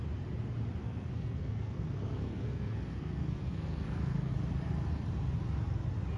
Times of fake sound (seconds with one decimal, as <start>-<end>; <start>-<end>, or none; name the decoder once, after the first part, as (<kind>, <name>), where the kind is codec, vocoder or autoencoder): 0.8-4.3 (codec, SNAC)